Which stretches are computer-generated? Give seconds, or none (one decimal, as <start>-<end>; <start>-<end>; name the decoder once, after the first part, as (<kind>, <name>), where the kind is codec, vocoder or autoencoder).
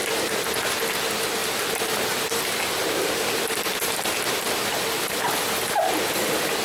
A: 1.4-5.4 (vocoder, BigVGAN v2)